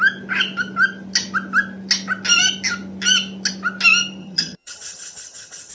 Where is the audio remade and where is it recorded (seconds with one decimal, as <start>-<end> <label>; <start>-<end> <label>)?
0.0-4.2 recorded; 4.2-5.7 remade